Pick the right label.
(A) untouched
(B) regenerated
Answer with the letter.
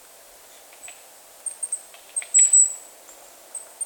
A